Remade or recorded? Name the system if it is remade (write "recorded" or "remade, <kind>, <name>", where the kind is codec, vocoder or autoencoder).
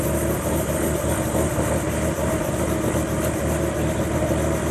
recorded